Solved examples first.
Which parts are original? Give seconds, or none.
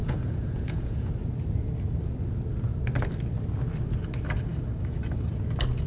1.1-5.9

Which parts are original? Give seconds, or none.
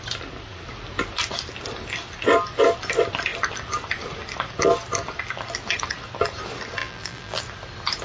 0.0-6.8; 7.4-8.0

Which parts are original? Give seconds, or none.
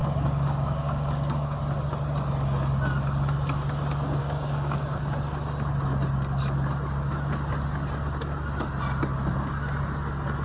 1.6-4.2; 5.0-10.4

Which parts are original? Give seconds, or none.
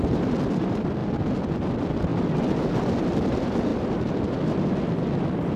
1.0-1.7; 2.1-3.1; 3.7-5.6